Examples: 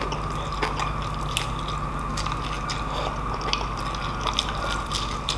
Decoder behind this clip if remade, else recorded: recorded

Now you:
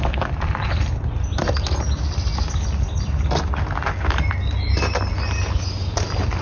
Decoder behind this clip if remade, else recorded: recorded